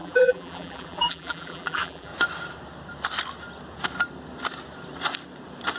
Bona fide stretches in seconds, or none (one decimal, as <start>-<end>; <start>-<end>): 2.1-5.8